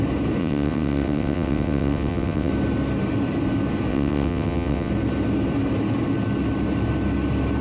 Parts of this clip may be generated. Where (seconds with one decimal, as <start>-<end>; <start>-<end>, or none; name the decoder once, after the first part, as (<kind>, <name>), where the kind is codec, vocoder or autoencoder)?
0.4-2.5 (vocoder, WaveNeXt); 3.9-4.9